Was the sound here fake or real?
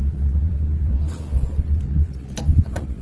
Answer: fake